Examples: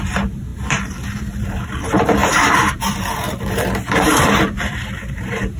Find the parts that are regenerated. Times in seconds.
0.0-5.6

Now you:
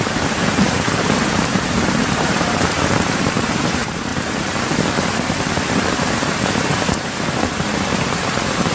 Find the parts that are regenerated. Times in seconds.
0.0-4.1; 6.0-8.7

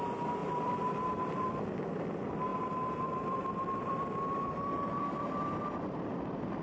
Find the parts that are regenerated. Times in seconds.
0.4-1.5; 2.5-5.6